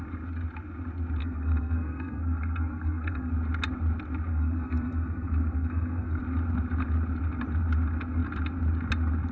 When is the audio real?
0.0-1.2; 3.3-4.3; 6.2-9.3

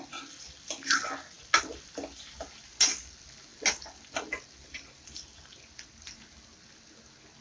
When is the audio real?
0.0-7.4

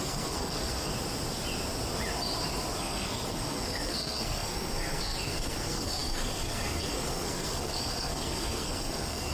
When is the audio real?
0.9-2.8